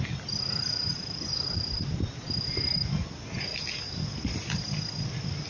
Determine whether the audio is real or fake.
real